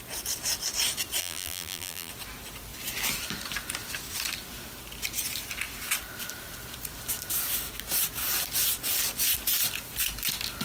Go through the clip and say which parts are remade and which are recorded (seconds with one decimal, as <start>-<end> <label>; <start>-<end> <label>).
0.0-1.2 recorded; 1.2-2.1 remade; 2.1-10.6 recorded